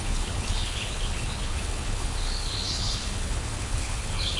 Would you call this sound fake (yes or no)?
yes